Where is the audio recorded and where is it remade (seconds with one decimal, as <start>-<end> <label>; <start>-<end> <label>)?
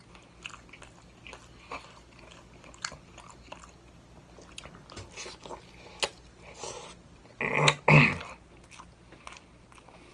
0.0-10.1 recorded